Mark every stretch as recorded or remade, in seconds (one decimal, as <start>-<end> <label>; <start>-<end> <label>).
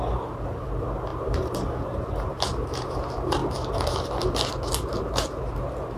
0.0-3.4 remade; 3.4-5.0 recorded; 5.0-6.0 remade